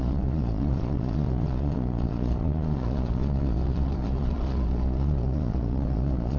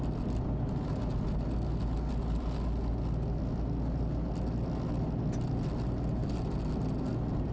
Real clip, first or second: second